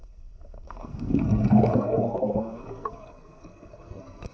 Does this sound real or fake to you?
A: fake